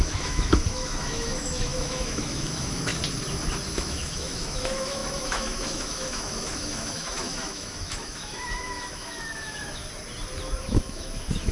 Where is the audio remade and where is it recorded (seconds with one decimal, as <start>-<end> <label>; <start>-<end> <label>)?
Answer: 0.0-2.9 remade; 2.9-3.7 recorded; 3.7-9.8 remade; 9.8-10.6 recorded; 10.6-11.5 remade